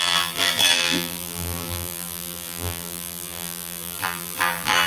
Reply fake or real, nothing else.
fake